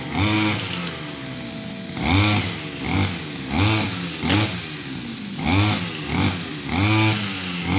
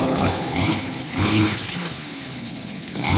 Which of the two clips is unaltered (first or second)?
first